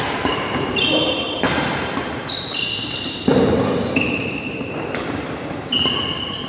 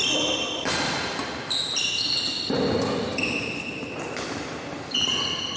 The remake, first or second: first